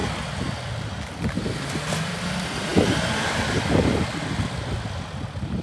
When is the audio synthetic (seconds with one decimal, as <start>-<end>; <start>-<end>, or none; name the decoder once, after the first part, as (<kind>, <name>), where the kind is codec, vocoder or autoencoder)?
none